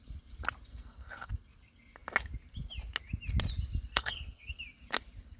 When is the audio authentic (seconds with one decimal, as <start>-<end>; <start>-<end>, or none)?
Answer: 0.0-0.7; 1.3-3.9; 4.6-5.4